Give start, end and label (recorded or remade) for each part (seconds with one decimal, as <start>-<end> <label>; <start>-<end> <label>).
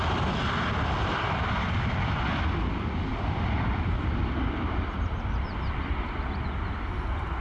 0.0-6.4 remade; 6.4-7.4 recorded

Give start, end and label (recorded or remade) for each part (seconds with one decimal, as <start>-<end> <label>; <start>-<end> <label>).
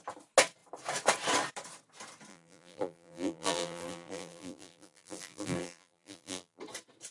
0.0-2.3 recorded; 2.3-6.6 remade; 6.6-7.1 recorded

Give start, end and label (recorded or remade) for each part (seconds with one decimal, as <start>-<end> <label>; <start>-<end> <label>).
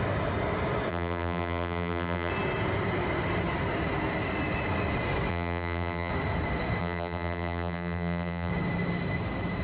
0.0-0.9 recorded; 0.9-2.3 remade; 2.3-5.3 recorded; 5.3-6.1 remade; 6.1-6.8 recorded; 6.8-8.5 remade; 8.5-9.6 recorded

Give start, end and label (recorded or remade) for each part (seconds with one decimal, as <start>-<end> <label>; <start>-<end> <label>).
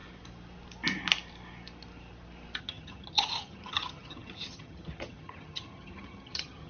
0.0-2.6 recorded; 2.6-6.7 remade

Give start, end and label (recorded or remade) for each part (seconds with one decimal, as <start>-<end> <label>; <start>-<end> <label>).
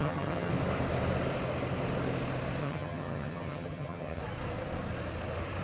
0.0-0.5 remade; 0.5-2.6 recorded; 2.6-4.2 remade; 4.2-5.6 recorded